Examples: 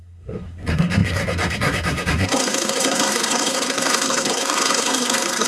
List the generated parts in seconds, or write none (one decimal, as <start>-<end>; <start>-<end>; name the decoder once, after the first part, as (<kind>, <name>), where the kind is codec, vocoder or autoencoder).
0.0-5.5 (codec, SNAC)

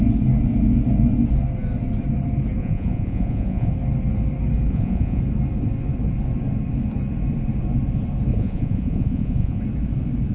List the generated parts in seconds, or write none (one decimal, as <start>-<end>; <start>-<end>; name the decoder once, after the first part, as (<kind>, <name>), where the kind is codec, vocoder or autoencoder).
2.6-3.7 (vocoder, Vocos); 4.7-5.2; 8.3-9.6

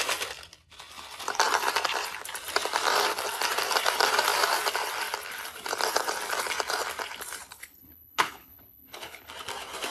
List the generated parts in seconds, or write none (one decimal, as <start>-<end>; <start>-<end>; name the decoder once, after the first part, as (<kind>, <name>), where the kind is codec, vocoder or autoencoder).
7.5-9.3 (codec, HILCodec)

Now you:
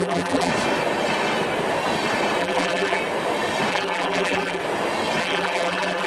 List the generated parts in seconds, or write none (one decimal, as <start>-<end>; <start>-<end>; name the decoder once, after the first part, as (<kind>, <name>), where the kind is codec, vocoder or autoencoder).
0.0-0.5 (vocoder, BigVGAN v2); 2.4-3.0; 3.7-4.6; 5.2-6.1

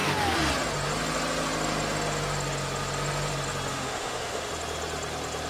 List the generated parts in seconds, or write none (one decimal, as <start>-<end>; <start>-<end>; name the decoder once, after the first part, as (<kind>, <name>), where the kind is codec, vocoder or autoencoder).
3.7-4.5 (autoencoder, DAC-VAE)

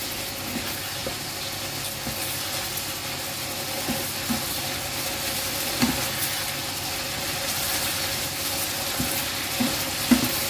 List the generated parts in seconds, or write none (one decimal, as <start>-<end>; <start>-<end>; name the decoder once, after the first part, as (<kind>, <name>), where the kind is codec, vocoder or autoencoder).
none

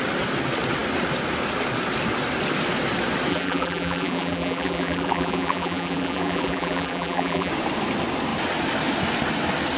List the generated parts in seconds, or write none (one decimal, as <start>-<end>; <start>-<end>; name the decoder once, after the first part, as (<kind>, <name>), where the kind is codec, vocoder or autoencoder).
3.3-7.5 (vocoder, BigVGAN v2)